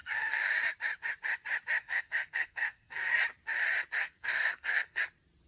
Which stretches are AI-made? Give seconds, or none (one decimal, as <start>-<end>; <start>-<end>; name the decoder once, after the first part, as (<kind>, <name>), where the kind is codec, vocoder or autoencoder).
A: 0.0-0.5 (codec, SNAC); 1.8-3.1; 4.0-5.0